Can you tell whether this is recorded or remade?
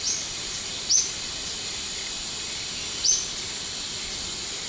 recorded